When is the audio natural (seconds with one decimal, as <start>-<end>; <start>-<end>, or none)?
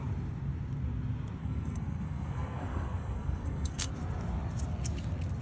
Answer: 0.0-1.4; 3.9-5.4